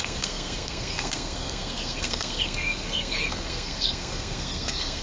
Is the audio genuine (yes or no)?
no